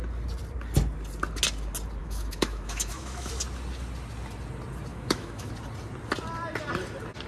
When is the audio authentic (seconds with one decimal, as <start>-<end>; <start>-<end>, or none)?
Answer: 0.0-2.0; 3.3-4.9; 5.5-7.3